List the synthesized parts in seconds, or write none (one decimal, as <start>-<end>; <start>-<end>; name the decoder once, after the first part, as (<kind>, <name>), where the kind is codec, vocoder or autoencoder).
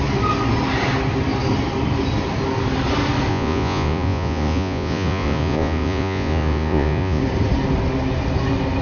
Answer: 3.3-7.2 (vocoder, Vocos)